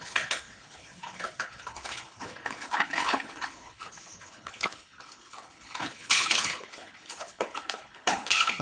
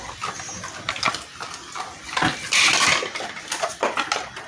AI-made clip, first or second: first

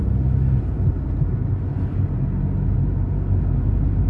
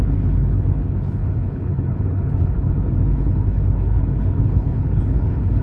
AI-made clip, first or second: second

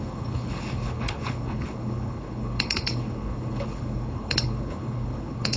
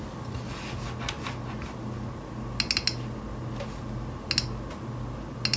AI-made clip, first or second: first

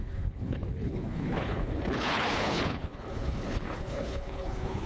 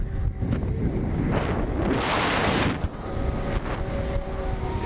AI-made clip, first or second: first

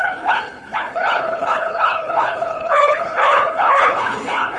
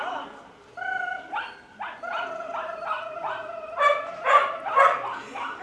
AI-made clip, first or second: first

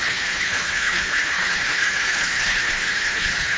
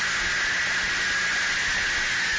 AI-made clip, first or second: first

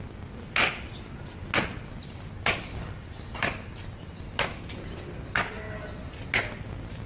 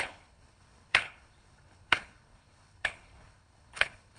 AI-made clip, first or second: second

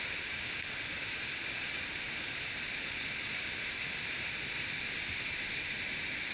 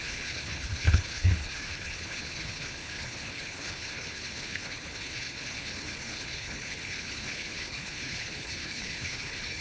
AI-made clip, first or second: second